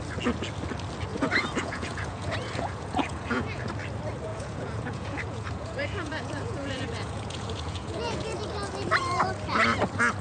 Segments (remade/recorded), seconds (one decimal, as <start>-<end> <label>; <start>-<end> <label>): 0.0-1.1 recorded; 1.1-3.7 remade; 3.7-4.3 recorded; 4.3-8.4 remade; 8.4-10.2 recorded